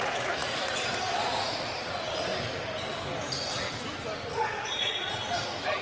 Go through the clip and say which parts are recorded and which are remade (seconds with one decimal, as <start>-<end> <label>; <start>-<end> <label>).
0.0-2.3 remade; 2.3-4.3 recorded; 4.3-5.8 remade